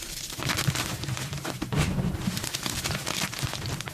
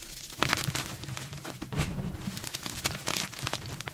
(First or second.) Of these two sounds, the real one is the second